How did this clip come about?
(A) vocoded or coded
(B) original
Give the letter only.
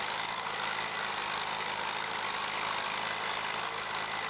B